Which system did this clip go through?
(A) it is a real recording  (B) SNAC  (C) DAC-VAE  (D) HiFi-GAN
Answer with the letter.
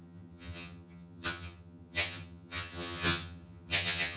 D